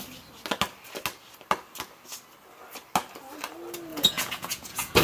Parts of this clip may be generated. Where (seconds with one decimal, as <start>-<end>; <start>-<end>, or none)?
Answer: 3.9-5.0